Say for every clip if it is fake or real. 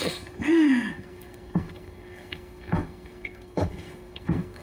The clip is fake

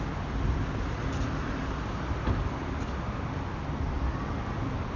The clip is real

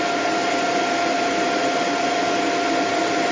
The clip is real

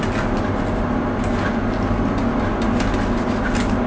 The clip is real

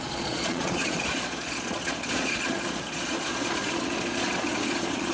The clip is fake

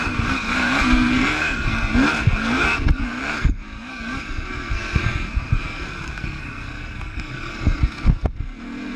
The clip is fake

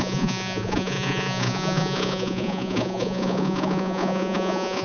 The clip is fake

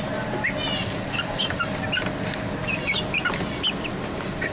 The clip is real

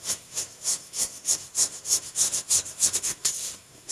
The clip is fake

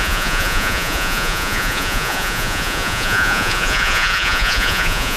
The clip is fake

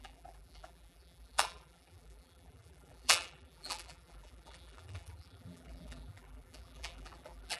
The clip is fake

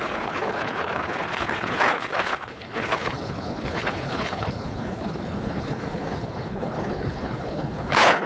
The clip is fake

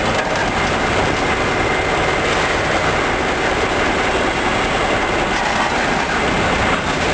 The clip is real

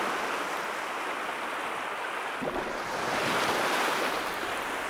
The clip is real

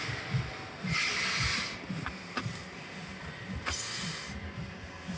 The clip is real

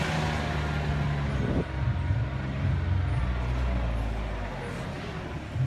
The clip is real